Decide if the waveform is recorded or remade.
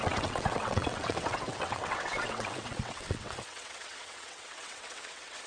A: remade